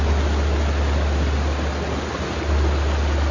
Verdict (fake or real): real